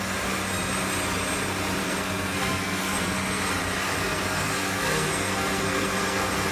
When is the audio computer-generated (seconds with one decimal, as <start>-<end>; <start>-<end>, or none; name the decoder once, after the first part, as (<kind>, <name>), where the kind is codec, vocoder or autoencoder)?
1.8-3.5 (codec, SNAC); 4.0-6.5